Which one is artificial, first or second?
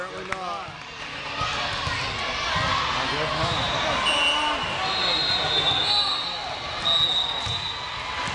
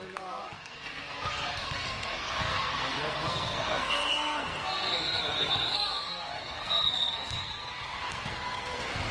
second